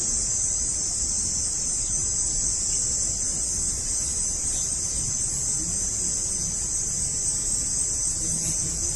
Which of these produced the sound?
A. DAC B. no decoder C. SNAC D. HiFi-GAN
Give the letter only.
B